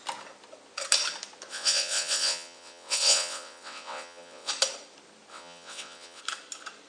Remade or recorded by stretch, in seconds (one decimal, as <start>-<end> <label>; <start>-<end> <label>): 0.0-1.5 recorded; 1.5-4.5 remade; 4.5-5.3 recorded; 5.3-6.2 remade; 6.2-6.9 recorded